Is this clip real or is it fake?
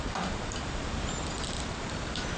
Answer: real